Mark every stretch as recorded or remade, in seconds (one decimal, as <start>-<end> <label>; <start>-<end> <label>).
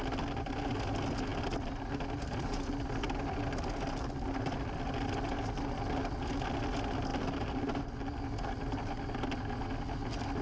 0.0-10.4 recorded